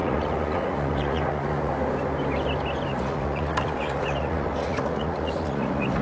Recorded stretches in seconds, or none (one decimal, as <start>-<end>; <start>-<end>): 1.7-2.9